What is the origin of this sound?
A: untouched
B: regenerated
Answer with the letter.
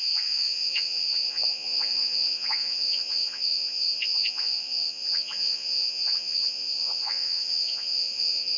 B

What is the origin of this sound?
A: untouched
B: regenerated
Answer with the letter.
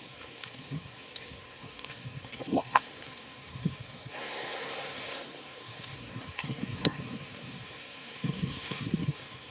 B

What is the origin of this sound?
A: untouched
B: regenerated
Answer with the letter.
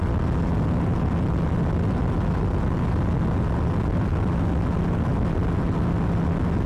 A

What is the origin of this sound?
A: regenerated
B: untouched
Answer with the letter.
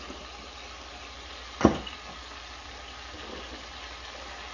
B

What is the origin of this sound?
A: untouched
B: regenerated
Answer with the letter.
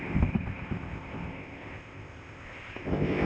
B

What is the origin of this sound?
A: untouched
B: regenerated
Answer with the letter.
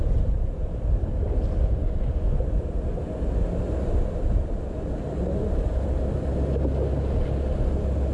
A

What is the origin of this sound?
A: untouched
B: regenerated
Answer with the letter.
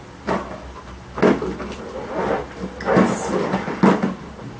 A